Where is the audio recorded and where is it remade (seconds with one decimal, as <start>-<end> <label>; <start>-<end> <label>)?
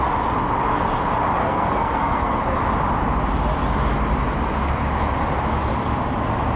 0.0-1.4 recorded; 1.4-2.4 remade; 2.4-6.6 recorded